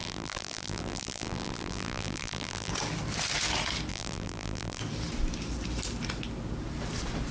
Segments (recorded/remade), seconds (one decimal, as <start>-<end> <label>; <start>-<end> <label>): 0.0-2.7 remade; 2.7-3.9 recorded; 3.9-4.8 remade; 4.8-7.3 recorded